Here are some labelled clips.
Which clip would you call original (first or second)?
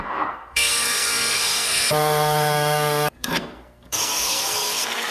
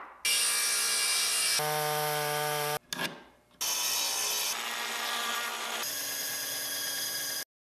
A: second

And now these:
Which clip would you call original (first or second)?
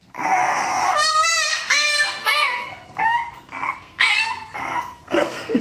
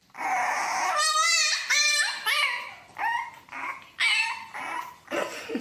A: second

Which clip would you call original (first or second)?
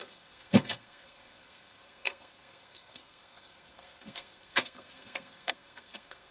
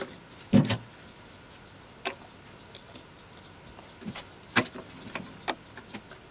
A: second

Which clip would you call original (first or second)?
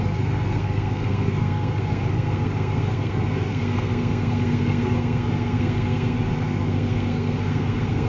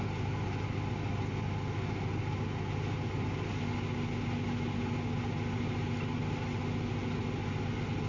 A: second